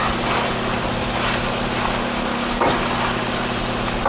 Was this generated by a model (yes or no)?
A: no